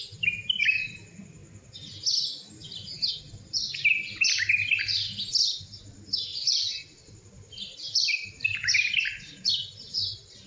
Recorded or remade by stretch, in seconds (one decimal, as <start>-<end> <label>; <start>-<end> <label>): 0.0-6.3 recorded; 6.3-9.5 remade; 9.5-10.5 recorded